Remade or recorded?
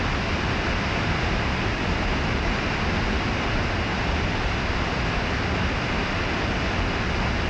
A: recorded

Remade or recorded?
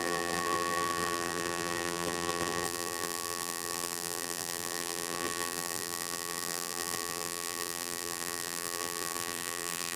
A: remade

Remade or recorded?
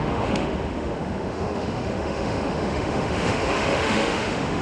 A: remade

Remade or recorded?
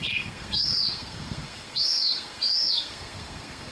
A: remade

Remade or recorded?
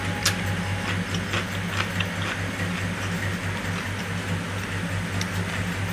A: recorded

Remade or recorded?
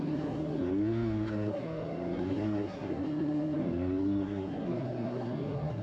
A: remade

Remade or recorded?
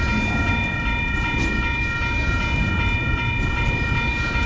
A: recorded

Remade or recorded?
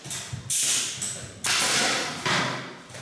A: recorded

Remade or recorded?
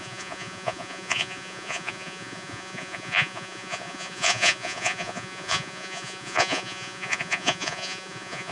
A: remade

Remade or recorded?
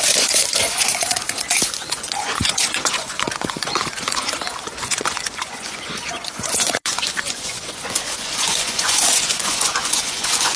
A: remade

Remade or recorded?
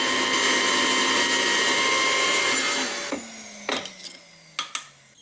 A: recorded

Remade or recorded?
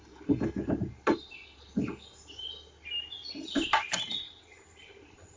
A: recorded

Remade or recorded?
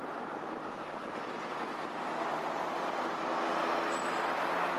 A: recorded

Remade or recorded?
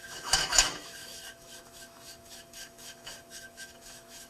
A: remade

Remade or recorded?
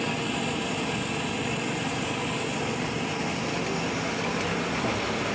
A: recorded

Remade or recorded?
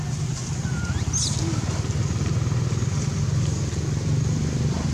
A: recorded